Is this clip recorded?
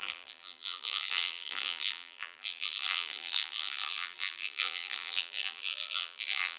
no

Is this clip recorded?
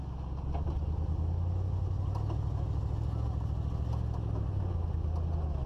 yes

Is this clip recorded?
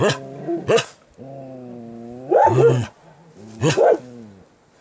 yes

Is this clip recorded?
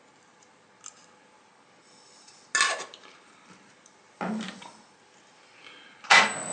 yes